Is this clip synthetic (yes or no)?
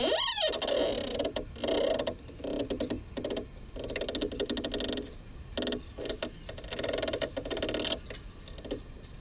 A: no